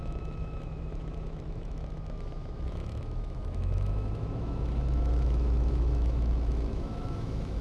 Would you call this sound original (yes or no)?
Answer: no